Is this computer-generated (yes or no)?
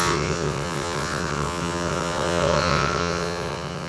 yes